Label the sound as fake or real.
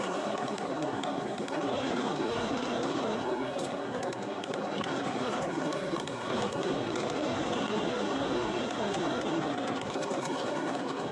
fake